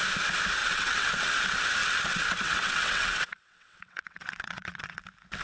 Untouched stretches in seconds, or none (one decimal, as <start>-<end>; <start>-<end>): 0.0-0.6; 1.3-1.8; 5.0-5.4